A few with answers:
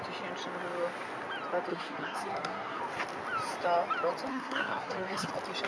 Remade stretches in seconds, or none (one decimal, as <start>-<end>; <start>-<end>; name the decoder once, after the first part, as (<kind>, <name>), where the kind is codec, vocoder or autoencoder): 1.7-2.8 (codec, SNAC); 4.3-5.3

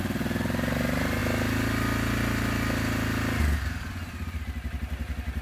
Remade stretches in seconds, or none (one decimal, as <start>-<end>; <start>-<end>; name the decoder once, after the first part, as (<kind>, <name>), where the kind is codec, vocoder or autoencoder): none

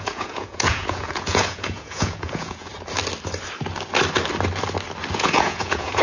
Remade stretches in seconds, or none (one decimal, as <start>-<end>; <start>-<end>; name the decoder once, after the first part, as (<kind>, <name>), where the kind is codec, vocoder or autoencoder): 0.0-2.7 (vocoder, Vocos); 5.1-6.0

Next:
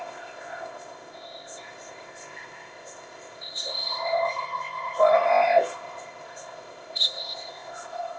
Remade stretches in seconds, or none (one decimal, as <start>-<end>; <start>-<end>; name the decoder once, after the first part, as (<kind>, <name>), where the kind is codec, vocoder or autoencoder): 0.0-8.2 (codec, ZipCodec)